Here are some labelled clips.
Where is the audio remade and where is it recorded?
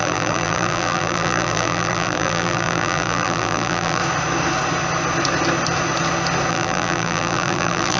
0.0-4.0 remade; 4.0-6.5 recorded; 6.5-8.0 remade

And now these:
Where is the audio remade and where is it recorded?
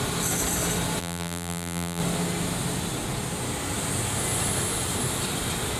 0.0-1.0 recorded; 1.0-2.0 remade; 2.0-5.8 recorded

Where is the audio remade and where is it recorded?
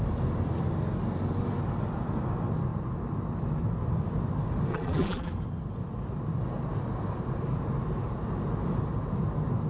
0.0-4.7 recorded; 4.7-5.3 remade; 5.3-9.7 recorded